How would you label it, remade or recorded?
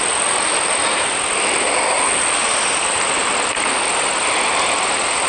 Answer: recorded